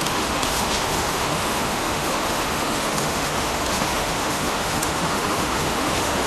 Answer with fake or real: fake